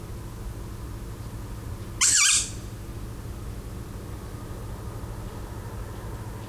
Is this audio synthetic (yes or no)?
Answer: no